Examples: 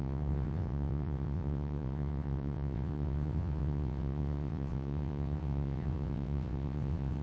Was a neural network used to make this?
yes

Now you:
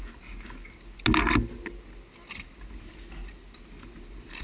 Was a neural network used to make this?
no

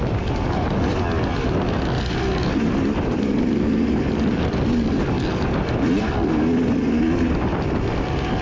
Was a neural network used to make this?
no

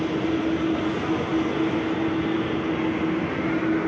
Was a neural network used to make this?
no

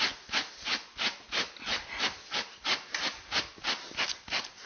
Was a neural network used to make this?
no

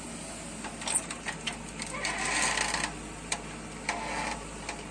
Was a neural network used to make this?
no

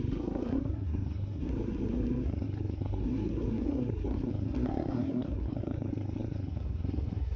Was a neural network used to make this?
yes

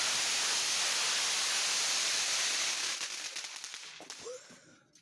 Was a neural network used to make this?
no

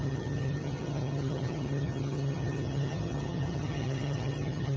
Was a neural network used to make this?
yes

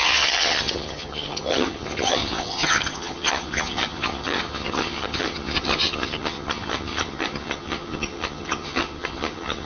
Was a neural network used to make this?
yes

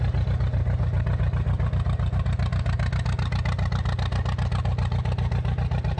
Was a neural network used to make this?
no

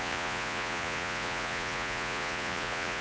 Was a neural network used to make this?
yes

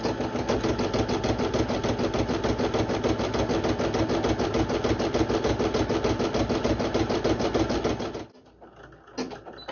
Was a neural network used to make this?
no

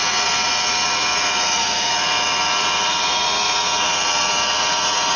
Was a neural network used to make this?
yes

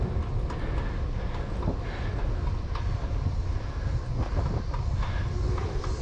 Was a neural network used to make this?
no